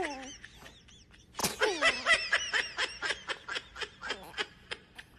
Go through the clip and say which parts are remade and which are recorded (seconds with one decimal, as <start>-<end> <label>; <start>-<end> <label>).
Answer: 0.0-5.2 recorded